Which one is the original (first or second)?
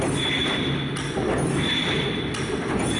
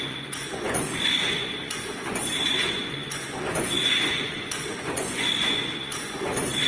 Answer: first